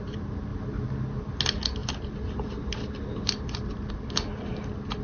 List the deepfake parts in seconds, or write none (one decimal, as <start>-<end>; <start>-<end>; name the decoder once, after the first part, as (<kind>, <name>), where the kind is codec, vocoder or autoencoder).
none